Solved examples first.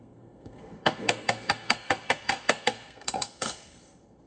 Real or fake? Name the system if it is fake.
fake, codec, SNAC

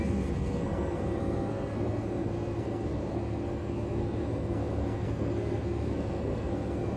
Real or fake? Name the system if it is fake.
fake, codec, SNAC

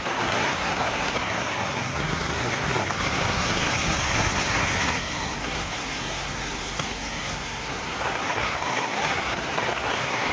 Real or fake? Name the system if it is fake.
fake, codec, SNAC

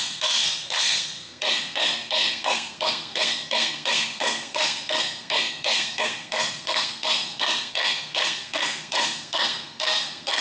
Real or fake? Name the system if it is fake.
fake, codec, SNAC